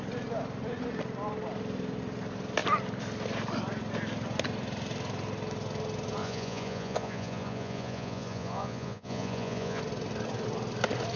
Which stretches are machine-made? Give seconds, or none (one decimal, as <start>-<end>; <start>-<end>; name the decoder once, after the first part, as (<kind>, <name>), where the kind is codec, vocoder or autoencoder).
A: 6.2-9.8 (vocoder, Vocos)